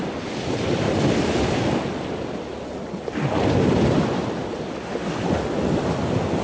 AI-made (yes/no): no